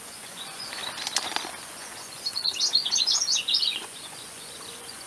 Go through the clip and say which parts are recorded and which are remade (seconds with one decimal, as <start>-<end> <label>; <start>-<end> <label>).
0.0-0.8 remade; 0.8-1.6 recorded; 1.6-5.1 remade